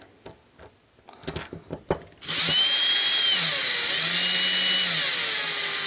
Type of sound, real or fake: real